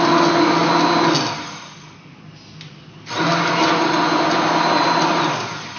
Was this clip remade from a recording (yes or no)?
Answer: no